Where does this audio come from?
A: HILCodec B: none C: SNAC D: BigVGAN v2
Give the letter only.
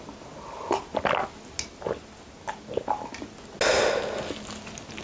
B